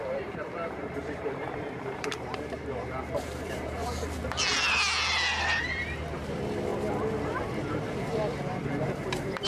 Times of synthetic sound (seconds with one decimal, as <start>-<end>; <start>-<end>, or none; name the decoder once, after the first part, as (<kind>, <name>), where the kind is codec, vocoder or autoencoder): 0.0-3.9 (vocoder, BigVGAN v2); 5.4-6.7; 7.2-9.5